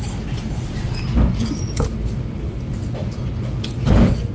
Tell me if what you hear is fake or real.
real